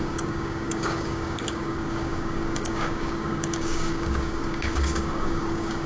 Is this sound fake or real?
fake